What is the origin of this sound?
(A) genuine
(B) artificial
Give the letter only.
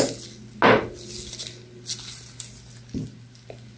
A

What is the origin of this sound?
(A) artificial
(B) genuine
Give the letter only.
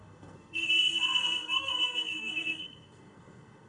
A